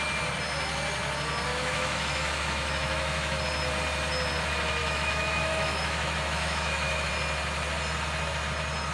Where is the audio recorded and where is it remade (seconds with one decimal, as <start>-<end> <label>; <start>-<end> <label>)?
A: 0.0-1.5 recorded; 1.5-3.4 remade; 3.4-4.8 recorded; 4.8-7.1 remade; 7.1-8.9 recorded